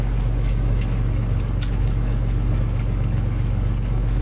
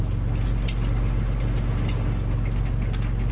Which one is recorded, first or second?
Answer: second